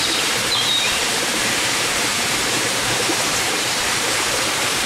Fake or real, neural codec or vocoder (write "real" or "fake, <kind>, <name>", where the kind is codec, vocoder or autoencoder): fake, vocoder, BigVGAN v2